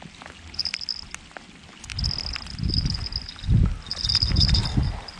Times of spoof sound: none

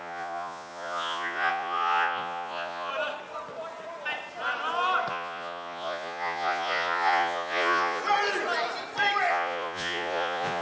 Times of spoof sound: 0.0-2.9; 5.1-8.0; 9.3-10.6

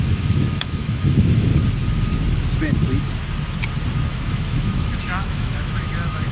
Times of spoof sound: 0.0-1.5; 4.1-6.3

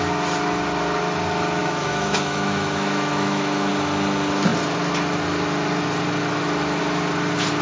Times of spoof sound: 1.6-3.7

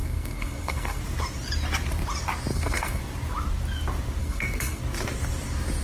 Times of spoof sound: 0.0-1.0; 2.5-3.0; 4.2-4.8

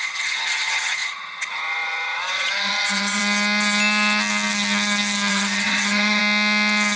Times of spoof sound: 0.0-3.2; 5.3-6.2